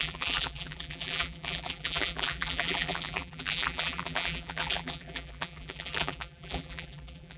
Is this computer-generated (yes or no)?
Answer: yes